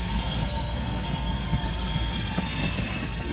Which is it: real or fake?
fake